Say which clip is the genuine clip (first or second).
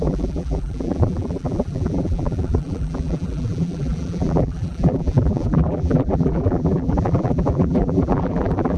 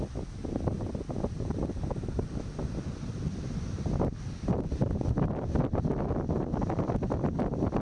second